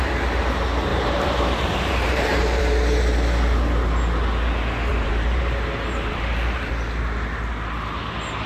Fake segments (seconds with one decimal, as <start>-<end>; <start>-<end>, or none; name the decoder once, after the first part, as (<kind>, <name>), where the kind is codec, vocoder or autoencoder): 0.9-2.6 (vocoder, BigVGAN v2); 4.9-6.7